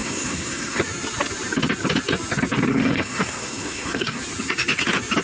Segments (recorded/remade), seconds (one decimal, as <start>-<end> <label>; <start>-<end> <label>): 0.0-0.8 remade; 0.8-2.7 recorded; 2.7-4.2 remade; 4.2-5.2 recorded